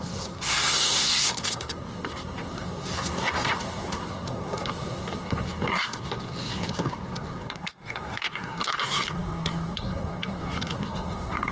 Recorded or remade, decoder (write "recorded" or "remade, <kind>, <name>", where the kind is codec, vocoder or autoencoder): remade, codec, SNAC